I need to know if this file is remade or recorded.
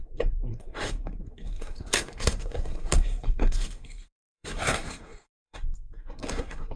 remade